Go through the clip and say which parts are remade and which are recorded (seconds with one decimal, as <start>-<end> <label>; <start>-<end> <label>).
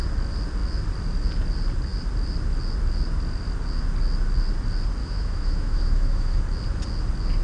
0.0-5.0 recorded; 5.0-6.4 remade; 6.4-7.4 recorded